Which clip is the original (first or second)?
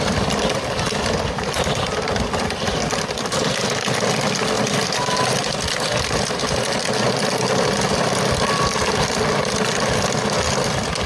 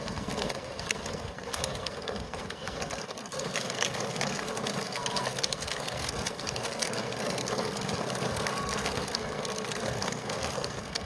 first